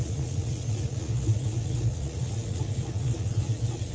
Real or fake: fake